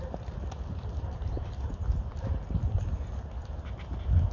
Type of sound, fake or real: fake